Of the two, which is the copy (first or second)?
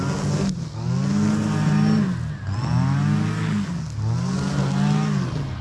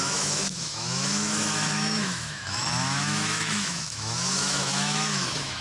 second